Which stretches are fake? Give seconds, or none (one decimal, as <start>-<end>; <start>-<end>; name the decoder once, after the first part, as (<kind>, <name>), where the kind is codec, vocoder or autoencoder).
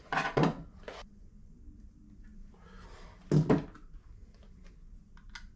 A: 0.0-1.5 (vocoder, Vocos)